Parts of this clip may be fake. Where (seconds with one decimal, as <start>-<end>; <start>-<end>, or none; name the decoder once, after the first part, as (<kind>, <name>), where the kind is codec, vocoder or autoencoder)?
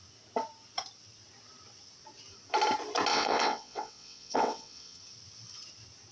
3.1-5.0 (vocoder, WaveNeXt)